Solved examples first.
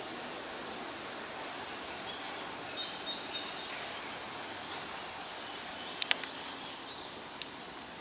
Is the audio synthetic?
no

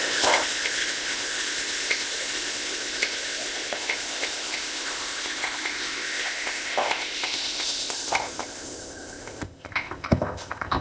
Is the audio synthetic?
yes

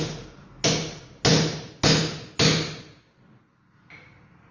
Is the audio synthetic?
no